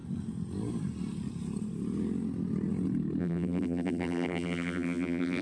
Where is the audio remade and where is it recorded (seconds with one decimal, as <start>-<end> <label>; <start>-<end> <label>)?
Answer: 0.0-3.2 recorded; 3.2-5.4 remade